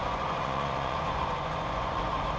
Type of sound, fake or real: fake